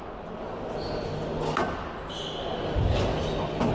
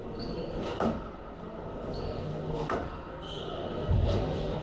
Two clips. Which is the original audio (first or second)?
first